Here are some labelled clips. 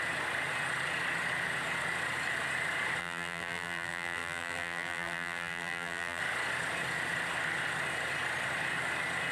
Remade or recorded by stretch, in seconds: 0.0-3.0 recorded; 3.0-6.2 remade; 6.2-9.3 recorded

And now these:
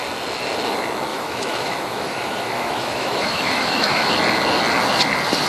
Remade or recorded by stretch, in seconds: 0.0-1.1 recorded; 1.1-4.1 remade; 4.1-5.5 recorded

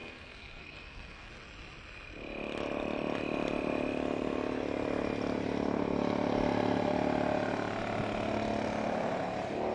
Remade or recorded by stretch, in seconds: 0.0-1.3 remade; 1.3-9.7 recorded

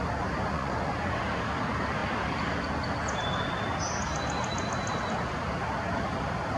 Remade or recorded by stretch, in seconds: 0.0-0.5 recorded; 0.5-1.2 remade; 1.2-6.6 recorded

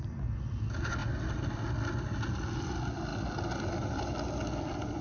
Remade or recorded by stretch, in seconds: 0.0-1.0 recorded; 1.0-1.7 remade; 1.7-5.0 recorded